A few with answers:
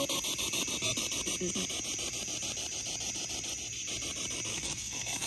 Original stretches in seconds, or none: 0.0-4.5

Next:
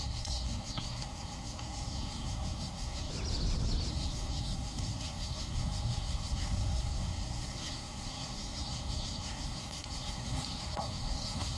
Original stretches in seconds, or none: 3.1-3.9

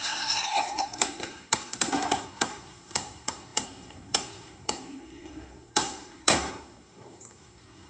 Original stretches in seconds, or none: none

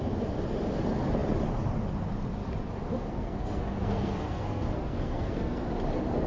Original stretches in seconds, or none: 0.0-3.1; 5.7-6.3